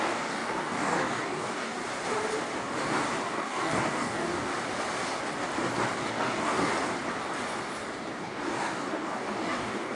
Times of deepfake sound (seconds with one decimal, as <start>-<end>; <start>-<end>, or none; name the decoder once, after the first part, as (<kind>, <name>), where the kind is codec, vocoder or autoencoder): 0.0-1.8 (codec, DAC); 3.2-4.5; 6.1-6.7; 8.1-10.0